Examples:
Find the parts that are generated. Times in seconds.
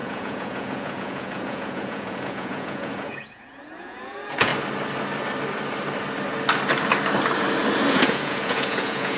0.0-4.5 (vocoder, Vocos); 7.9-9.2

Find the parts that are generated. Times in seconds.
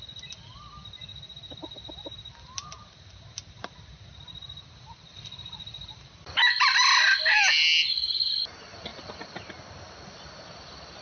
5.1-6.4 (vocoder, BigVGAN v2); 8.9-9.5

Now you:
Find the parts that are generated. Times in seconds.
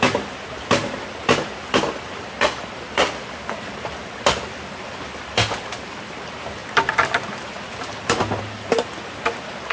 none